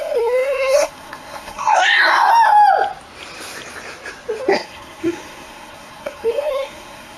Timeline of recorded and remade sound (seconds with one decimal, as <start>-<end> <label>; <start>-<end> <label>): 0.0-2.3 remade; 2.3-4.5 recorded; 4.5-7.2 remade